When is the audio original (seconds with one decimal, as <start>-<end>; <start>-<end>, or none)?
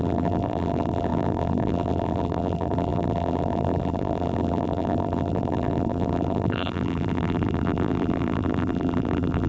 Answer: none